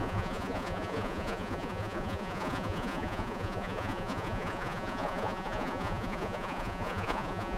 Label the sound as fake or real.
fake